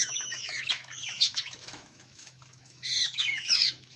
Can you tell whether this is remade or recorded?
remade